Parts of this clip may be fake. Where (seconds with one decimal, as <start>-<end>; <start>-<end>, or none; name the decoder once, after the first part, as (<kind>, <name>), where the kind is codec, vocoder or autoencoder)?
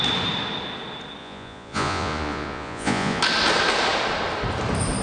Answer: 1.2-3.2 (vocoder, Vocos)